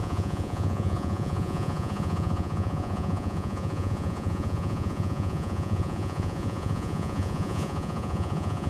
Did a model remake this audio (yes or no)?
yes